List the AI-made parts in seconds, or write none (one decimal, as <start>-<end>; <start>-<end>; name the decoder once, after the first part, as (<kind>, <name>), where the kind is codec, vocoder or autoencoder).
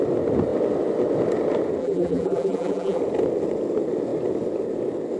1.8-3.0 (vocoder, BigVGAN v2)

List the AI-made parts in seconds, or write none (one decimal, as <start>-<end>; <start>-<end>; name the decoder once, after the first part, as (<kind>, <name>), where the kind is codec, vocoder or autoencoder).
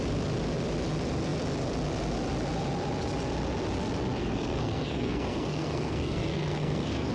4.2-7.1 (codec, SNAC)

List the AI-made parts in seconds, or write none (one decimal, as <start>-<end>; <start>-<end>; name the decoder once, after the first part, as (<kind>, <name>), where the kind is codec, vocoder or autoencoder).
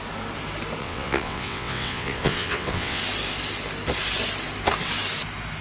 0.8-3.0 (vocoder, WaveNeXt)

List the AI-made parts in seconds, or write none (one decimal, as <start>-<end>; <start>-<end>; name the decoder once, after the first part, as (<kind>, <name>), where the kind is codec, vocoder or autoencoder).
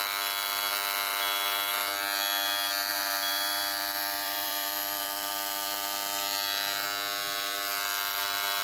2.9-5.3 (vocoder, BigVGAN v2)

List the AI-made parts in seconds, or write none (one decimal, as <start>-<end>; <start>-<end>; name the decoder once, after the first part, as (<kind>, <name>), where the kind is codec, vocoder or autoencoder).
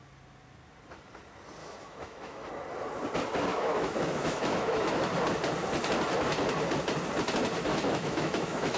1.6-2.5 (autoencoder, DAC-VAE); 3.5-4.9; 7.7-8.8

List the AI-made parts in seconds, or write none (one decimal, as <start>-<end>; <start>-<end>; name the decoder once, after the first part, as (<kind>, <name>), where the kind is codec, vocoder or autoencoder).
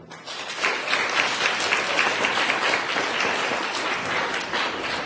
none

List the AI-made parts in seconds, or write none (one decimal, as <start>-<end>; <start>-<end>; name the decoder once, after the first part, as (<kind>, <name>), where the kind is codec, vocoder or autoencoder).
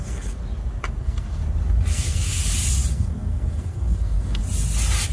0.0-0.4 (codec, SNAC); 1.0-1.4; 1.9-2.4; 2.9-4.4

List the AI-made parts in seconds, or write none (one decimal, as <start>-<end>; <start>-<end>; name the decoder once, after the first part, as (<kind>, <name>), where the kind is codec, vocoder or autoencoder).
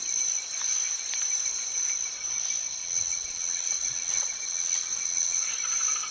2.8-5.5 (vocoder, WaveNeXt)